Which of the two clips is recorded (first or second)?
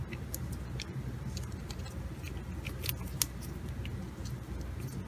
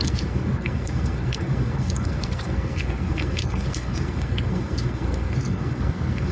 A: first